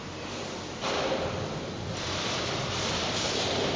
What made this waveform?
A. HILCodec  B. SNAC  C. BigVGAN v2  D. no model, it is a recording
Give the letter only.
D